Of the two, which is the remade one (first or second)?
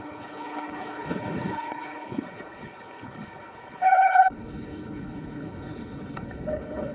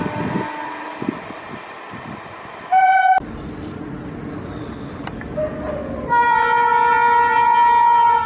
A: first